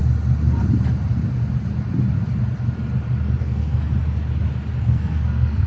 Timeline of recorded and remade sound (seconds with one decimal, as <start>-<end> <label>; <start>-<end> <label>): 0.0-3.4 recorded; 3.4-3.9 remade; 3.9-4.8 recorded; 4.8-5.7 remade